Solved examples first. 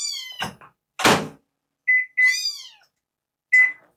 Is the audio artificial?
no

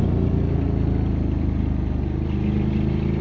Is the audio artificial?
no